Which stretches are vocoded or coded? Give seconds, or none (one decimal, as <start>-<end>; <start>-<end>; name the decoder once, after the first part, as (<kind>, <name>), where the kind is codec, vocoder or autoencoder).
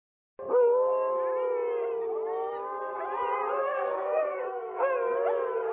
3.6-4.8 (codec, SNAC)